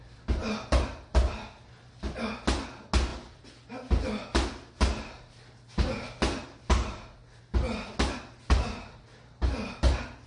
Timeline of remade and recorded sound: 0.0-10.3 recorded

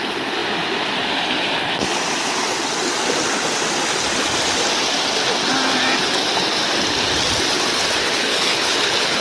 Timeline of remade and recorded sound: 0.0-8.0 recorded; 8.0-9.2 remade